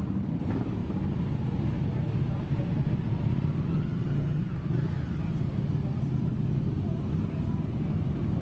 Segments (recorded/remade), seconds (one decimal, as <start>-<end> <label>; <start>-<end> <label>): 0.0-3.7 recorded; 3.7-4.4 remade; 4.4-8.4 recorded